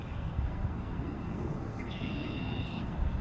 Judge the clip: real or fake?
fake